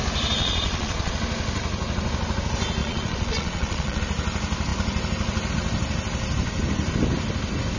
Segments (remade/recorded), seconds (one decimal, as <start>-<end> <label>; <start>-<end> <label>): 0.0-0.4 recorded; 0.4-1.1 remade; 1.1-2.8 recorded; 2.8-4.0 remade; 4.0-7.8 recorded